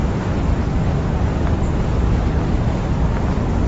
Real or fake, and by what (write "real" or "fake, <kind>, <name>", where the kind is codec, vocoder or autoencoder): real